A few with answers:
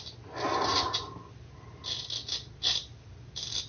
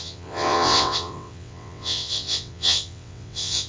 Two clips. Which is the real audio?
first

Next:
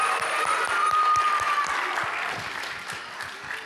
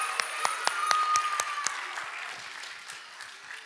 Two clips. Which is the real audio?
second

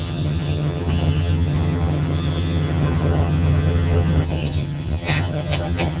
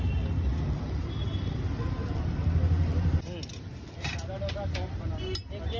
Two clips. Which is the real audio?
second